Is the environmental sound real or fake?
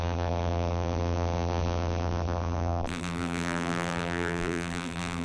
fake